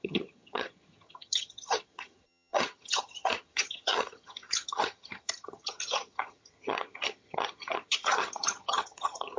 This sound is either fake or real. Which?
fake